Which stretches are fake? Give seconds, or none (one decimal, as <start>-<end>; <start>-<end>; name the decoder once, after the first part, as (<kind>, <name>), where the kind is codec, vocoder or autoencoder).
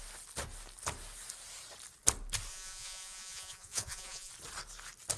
2.5-4.3 (vocoder, Vocos)